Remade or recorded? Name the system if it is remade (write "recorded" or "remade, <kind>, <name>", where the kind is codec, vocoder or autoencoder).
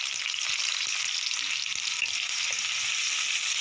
recorded